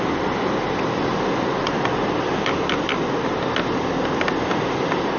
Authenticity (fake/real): real